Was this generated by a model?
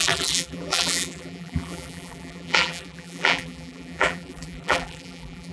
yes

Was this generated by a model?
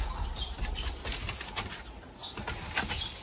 no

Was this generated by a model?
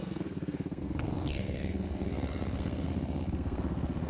yes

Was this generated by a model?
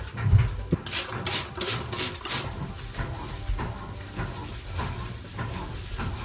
no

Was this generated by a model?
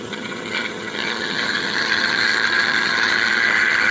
yes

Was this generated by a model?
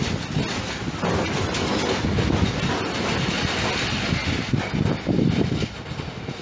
no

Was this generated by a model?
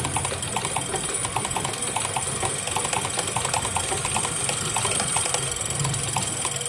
no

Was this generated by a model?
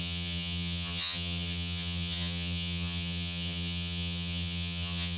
yes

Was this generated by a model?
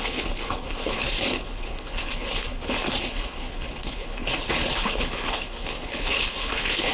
yes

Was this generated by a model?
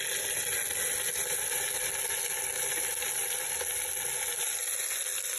no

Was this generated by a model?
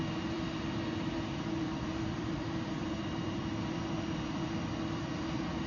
yes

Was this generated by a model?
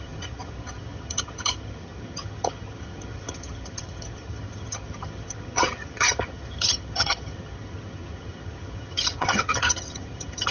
yes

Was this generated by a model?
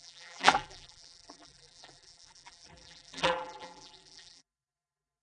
yes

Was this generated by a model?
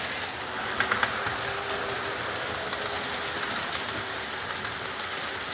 no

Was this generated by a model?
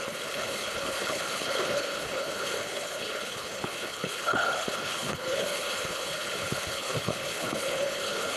yes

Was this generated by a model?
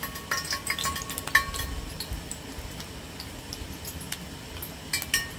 no